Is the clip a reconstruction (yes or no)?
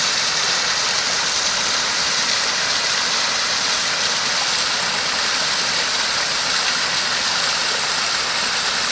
no